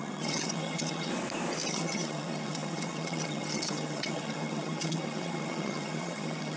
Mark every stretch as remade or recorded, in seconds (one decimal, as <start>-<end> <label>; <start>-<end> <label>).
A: 0.0-1.1 remade; 1.1-1.7 recorded; 1.7-6.6 remade